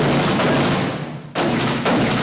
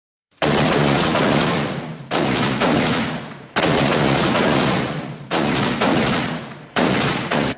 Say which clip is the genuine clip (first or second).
first